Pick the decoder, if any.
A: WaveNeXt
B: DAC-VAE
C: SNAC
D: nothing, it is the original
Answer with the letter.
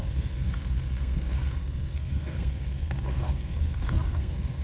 C